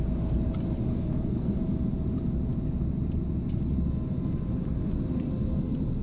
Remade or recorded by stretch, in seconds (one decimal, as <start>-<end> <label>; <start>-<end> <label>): 0.0-0.9 recorded; 0.9-1.6 remade; 1.6-6.0 recorded